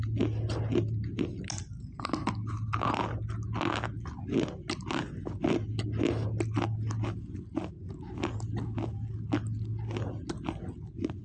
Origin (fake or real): real